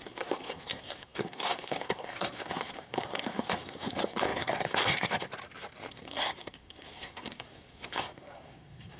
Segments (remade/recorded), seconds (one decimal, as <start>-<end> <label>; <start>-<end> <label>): 0.0-5.3 remade; 5.3-5.9 recorded; 5.9-9.0 remade